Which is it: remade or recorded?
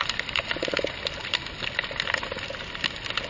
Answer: recorded